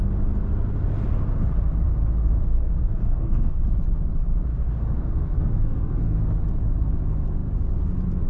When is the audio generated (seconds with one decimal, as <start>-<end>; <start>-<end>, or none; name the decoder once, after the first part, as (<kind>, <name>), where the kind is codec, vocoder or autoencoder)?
2.5-3.6 (codec, SNAC); 4.5-6.2